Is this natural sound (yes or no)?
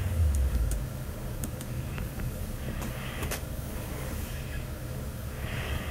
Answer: no